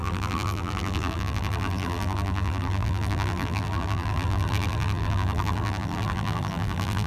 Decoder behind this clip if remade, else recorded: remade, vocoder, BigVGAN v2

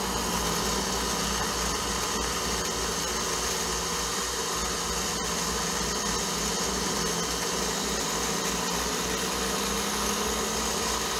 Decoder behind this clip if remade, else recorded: recorded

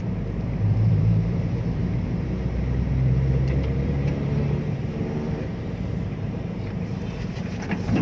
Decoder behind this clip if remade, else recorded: remade, vocoder, BigVGAN v2